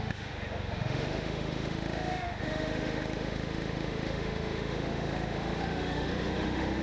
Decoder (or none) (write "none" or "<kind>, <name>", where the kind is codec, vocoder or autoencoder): autoencoder, DAC-VAE